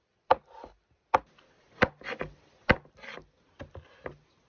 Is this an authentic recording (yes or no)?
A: yes